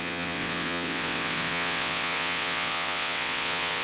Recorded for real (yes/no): no